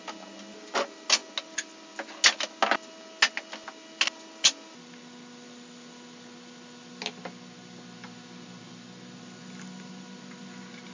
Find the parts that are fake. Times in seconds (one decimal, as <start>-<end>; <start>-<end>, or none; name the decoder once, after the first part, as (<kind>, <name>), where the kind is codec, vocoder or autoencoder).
none